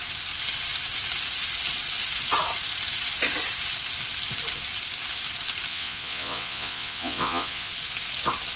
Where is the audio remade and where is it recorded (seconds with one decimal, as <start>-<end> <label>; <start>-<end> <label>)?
0.0-5.7 recorded; 5.7-7.7 remade; 7.7-8.6 recorded